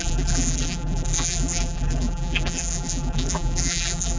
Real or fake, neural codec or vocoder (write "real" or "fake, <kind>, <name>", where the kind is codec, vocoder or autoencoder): fake, vocoder, BigVGAN v2